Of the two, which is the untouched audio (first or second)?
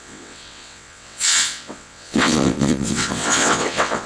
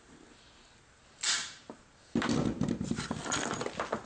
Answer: second